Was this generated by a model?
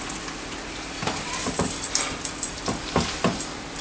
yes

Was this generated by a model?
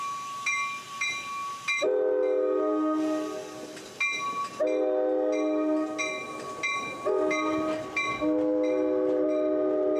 no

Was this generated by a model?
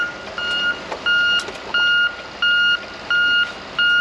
no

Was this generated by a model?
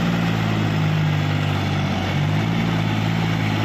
no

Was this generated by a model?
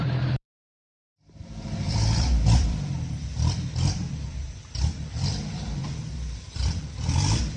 yes